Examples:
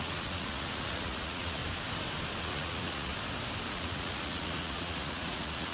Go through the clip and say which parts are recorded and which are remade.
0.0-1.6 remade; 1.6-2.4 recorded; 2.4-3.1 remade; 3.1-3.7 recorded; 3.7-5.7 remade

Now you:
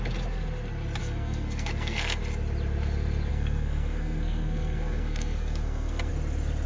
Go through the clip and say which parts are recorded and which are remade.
0.0-1.0 recorded; 1.0-2.2 remade; 2.2-3.3 recorded; 3.3-6.1 remade; 6.1-6.7 recorded

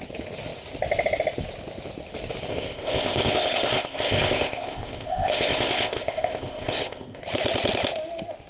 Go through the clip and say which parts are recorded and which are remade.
0.0-2.5 recorded; 2.5-7.2 remade; 7.2-8.5 recorded

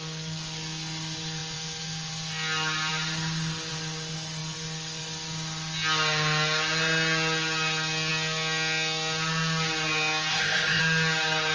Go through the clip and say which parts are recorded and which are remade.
0.0-10.3 recorded; 10.3-10.8 remade; 10.8-11.5 recorded

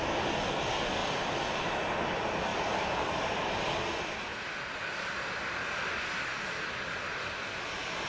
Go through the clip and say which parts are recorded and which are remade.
0.0-1.0 recorded; 1.0-1.6 remade; 1.6-2.5 recorded; 2.5-3.6 remade; 3.6-8.1 recorded